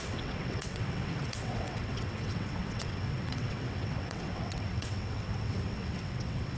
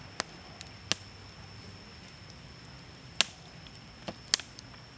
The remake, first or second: first